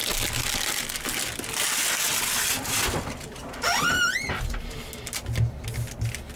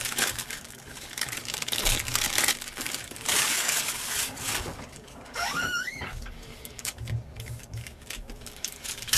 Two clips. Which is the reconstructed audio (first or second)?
second